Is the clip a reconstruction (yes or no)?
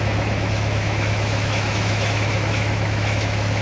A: yes